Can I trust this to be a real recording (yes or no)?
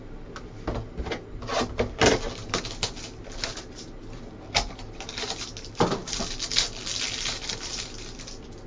yes